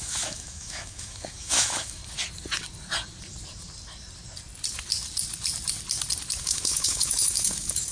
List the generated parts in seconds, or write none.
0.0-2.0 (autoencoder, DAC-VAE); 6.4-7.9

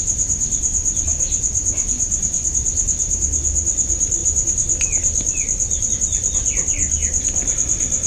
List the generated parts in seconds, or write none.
none

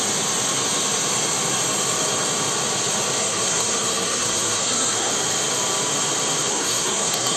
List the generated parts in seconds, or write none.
3.2-5.1 (codec, SNAC); 6.5-7.4

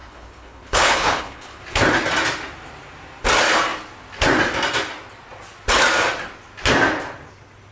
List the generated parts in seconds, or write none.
0.0-1.6 (codec, HILCodec)

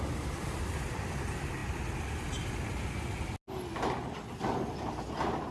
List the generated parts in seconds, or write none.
none

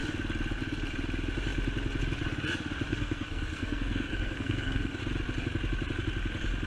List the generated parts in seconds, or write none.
2.9-5.0 (codec, SNAC)

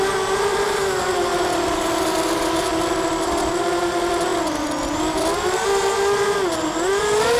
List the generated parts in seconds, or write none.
0.5-1.9 (vocoder, BigVGAN v2); 2.7-3.6

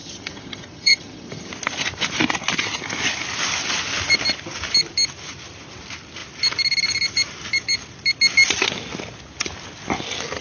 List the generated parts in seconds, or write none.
0.0-1.5 (vocoder, HiFi-GAN)